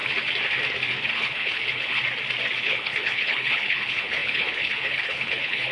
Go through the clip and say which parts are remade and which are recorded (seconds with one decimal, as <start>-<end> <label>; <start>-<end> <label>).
0.0-1.1 recorded; 1.1-2.0 remade; 2.0-2.6 recorded; 2.6-5.7 remade